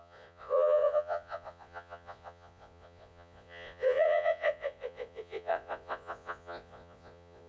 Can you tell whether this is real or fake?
fake